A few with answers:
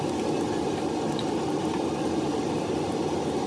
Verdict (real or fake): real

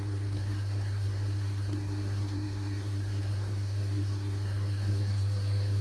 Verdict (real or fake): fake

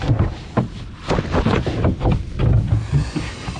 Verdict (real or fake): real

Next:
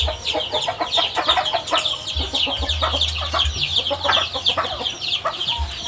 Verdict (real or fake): real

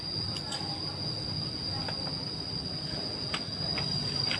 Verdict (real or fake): real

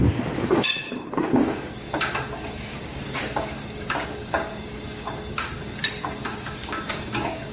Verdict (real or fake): fake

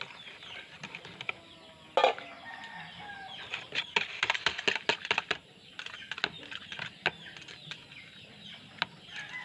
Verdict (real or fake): real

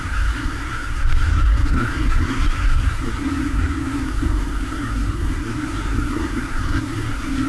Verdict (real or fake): fake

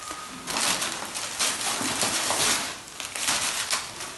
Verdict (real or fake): real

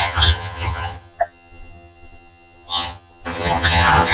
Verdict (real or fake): fake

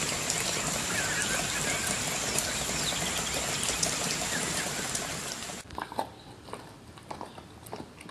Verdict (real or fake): real